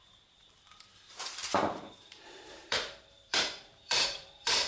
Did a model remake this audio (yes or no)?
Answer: yes